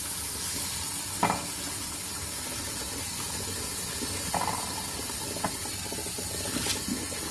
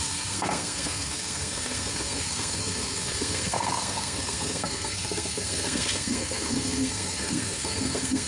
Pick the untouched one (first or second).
first